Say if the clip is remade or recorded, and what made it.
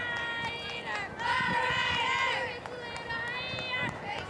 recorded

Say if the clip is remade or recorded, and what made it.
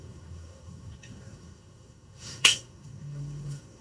remade, codec, SNAC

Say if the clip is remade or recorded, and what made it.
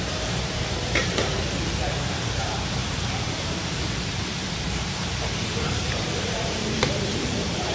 remade, vocoder, BigVGAN v2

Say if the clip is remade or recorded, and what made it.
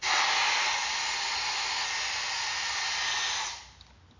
recorded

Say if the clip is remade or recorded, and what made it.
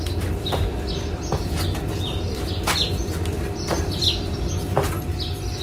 recorded